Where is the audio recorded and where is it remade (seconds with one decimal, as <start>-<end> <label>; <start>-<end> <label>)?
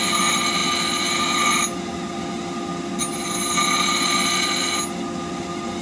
0.0-5.8 recorded